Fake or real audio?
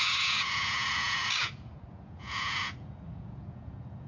fake